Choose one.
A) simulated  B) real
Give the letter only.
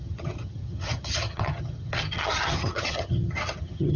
A